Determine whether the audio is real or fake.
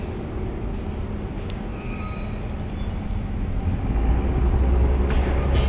real